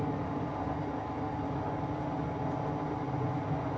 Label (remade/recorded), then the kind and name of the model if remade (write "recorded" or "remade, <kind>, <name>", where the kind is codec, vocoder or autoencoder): recorded